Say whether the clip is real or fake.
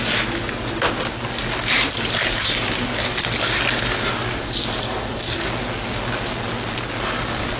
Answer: real